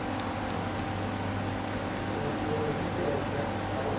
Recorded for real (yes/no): yes